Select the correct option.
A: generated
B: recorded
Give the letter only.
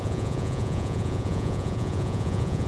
A